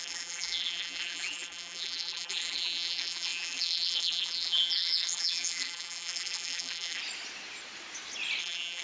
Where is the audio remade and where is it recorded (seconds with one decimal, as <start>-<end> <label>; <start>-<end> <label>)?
0.0-7.0 remade; 7.0-8.4 recorded; 8.4-8.8 remade

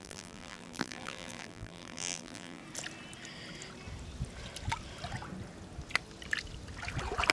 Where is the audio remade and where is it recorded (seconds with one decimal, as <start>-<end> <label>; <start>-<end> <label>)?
0.0-2.6 remade; 2.6-7.3 recorded

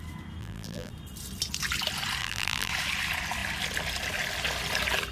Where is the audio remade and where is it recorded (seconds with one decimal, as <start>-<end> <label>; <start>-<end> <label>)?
0.0-0.4 recorded; 0.4-0.9 remade; 0.9-2.2 recorded; 2.2-2.7 remade; 2.7-5.1 recorded

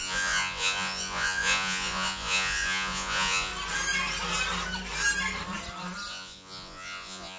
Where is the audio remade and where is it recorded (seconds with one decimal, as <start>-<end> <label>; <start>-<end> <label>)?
0.0-3.5 remade; 3.5-6.1 recorded; 6.1-7.4 remade